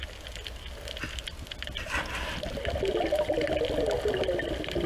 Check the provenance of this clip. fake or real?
real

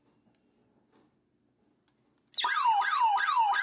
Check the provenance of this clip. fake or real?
real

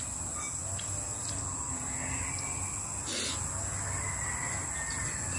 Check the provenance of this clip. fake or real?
real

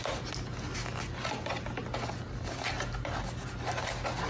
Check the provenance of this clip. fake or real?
real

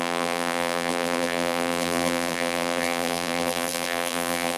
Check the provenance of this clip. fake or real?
fake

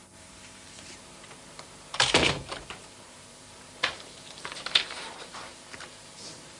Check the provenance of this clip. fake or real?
fake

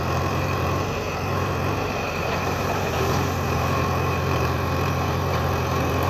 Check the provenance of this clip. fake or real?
fake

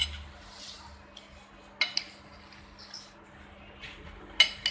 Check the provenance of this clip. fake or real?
real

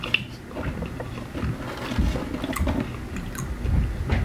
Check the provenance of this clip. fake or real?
real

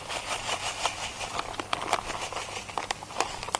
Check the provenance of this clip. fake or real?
real